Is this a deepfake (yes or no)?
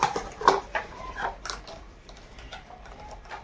yes